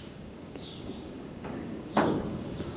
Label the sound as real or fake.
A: fake